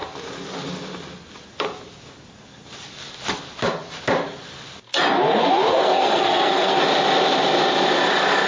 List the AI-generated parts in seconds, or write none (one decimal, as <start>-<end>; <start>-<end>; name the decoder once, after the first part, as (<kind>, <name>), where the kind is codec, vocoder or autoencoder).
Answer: 5.7-6.8 (codec, SNAC)